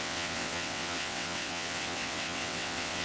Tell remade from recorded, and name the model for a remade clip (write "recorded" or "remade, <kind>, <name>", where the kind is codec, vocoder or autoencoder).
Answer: remade, vocoder, WaveNeXt